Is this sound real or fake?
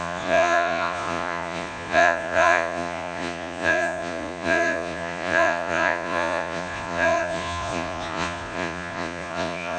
fake